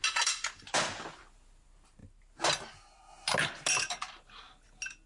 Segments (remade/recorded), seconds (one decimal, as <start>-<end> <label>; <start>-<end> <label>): 0.0-5.1 recorded